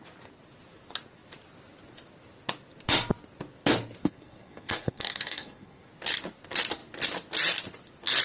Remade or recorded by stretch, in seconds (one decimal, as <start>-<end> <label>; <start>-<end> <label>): 0.0-4.0 recorded; 4.0-5.9 remade; 5.9-8.2 recorded